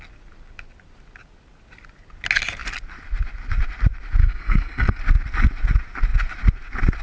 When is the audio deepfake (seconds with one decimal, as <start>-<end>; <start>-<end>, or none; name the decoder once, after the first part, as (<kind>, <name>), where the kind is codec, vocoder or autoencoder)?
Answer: 4.2-5.0 (codec, SNAC)